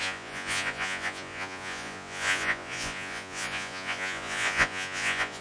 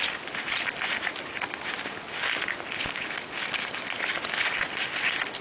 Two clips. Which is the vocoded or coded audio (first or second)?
first